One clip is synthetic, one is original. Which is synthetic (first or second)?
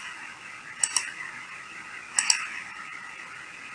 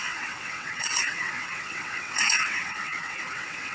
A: second